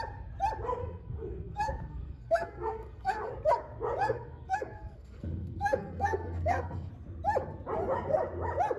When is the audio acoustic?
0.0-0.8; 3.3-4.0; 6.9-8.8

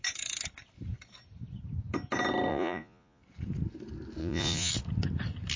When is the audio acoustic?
0.0-2.5; 3.2-4.2; 4.7-5.6

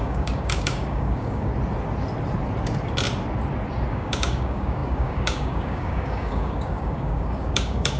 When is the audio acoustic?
1.5-3.9

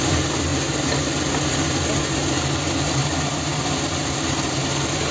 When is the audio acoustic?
0.0-5.1

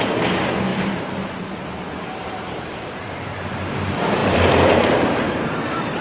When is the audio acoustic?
none

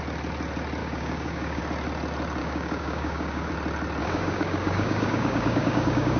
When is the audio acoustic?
0.0-0.8; 1.6-2.4; 3.5-4.0

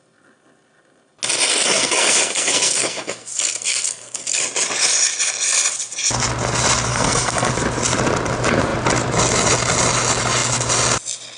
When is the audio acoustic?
0.0-1.5; 4.4-6.9; 7.5-11.4

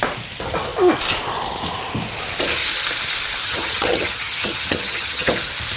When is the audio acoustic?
0.0-3.4; 5.3-5.8